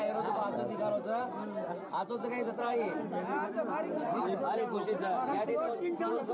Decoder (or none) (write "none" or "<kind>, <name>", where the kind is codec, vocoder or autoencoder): none